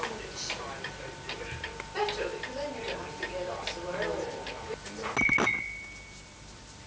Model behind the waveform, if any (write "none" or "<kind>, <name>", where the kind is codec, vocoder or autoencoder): none